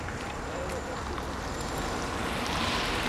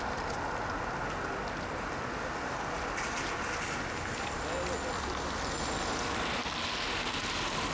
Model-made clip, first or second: first